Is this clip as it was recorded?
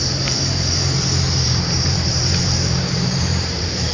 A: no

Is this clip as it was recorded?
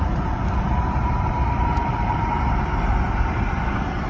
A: no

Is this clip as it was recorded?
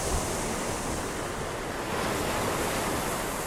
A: yes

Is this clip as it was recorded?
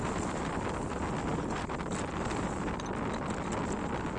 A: yes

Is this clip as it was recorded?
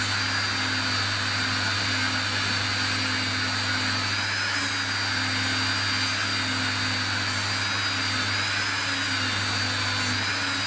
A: yes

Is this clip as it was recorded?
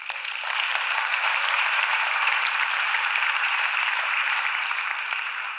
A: no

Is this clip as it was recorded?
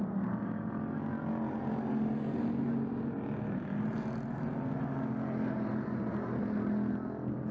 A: yes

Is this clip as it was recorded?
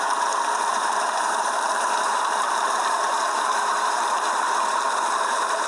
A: no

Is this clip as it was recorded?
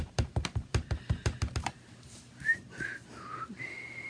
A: no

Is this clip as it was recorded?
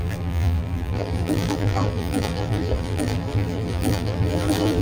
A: no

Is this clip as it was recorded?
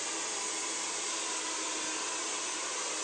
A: yes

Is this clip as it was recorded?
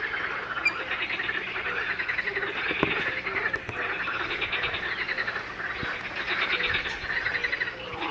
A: yes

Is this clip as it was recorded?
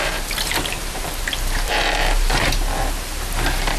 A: no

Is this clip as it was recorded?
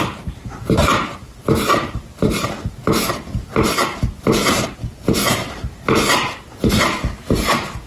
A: no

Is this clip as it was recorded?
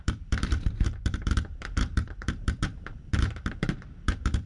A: no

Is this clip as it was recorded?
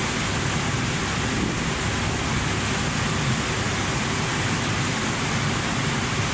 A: yes